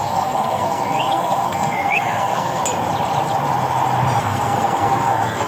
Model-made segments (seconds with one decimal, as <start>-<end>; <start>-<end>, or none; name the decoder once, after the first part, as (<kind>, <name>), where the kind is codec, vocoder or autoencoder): 0.0-2.6 (codec, SNAC); 4.2-5.5